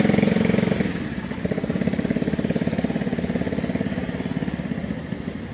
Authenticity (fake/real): real